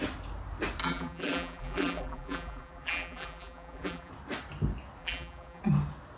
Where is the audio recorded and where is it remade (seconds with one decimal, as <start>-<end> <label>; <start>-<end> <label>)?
0.0-0.8 recorded; 0.8-4.1 remade; 4.1-5.0 recorded; 5.0-5.6 remade; 5.6-6.2 recorded